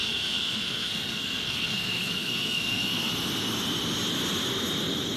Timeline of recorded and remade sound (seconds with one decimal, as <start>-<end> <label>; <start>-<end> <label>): 0.0-3.1 remade; 3.1-5.2 recorded